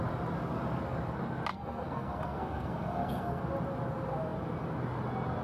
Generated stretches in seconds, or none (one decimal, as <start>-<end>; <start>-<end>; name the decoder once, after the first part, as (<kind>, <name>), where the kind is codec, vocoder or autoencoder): 1.5-3.4 (codec, SNAC)